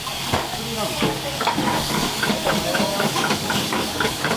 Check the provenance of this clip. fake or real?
fake